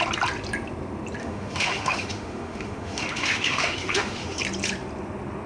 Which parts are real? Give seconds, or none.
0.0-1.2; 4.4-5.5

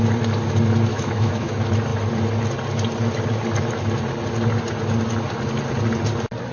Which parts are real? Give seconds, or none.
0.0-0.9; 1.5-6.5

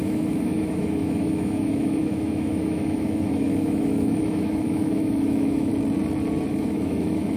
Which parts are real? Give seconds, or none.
5.7-6.5